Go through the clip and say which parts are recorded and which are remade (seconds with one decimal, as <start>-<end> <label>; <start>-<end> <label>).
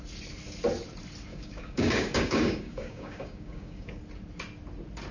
0.0-1.3 recorded; 1.3-4.0 remade; 4.0-5.1 recorded